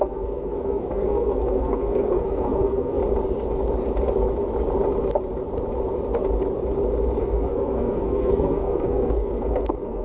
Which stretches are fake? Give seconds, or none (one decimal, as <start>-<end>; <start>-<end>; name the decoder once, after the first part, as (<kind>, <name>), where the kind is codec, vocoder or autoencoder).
0.0-3.0 (codec, SNAC); 7.2-10.0